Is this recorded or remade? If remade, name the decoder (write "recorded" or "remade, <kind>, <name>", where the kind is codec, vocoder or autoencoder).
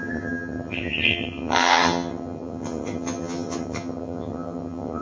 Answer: remade, vocoder, HiFi-GAN